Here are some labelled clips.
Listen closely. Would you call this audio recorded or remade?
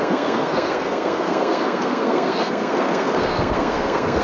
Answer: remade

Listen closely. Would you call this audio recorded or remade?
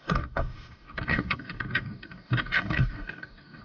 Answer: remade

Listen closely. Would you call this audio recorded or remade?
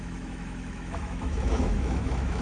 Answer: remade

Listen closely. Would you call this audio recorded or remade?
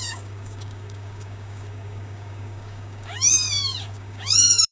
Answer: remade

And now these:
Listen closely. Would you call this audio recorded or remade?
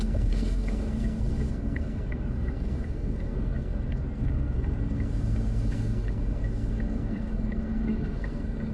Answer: remade